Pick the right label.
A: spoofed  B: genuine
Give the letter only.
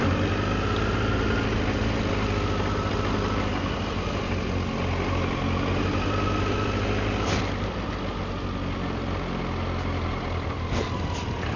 B